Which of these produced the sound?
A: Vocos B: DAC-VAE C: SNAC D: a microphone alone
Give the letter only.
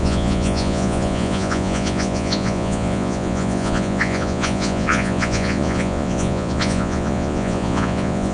A